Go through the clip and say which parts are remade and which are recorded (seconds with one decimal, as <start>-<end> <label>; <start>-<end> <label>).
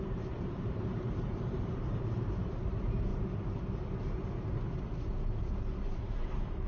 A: 0.0-3.1 remade; 3.1-5.5 recorded; 5.5-6.7 remade